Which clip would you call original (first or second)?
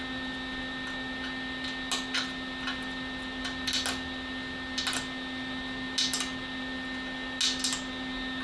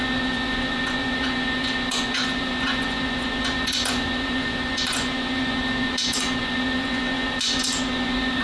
first